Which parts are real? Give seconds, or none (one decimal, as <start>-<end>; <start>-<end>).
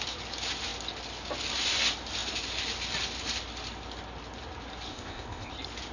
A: 0.0-4.9; 5.5-5.9